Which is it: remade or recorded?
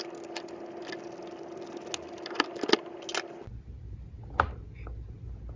recorded